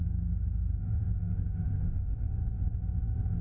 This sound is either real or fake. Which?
fake